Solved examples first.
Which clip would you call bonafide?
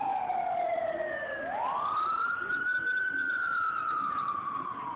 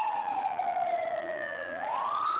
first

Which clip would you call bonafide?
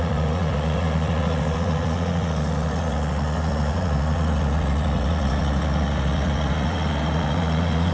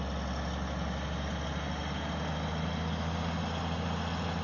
second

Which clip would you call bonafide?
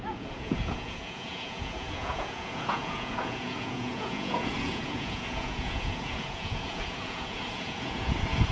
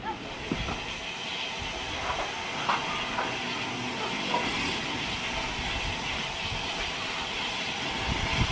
second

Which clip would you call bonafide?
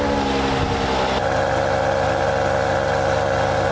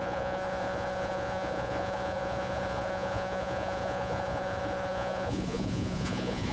first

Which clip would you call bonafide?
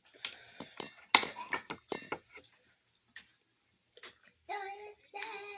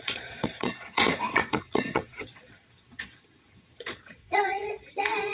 first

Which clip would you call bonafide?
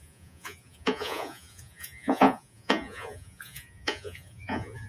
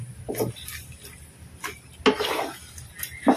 second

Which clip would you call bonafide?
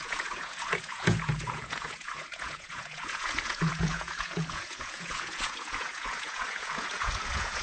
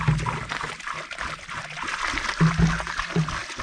second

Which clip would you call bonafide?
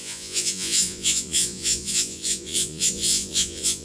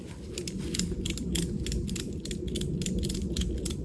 second